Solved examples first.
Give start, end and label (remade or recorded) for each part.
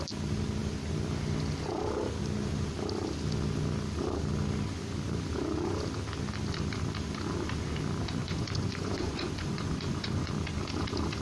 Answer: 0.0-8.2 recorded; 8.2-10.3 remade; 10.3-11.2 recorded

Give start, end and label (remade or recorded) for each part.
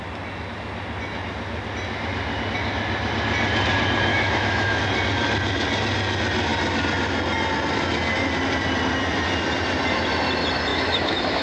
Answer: 0.0-4.1 recorded; 4.1-4.8 remade; 4.8-10.7 recorded; 10.7-11.4 remade